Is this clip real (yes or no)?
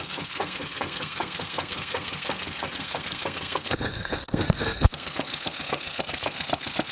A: no